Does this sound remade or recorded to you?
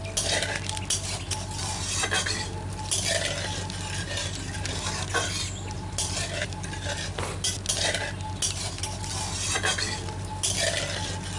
recorded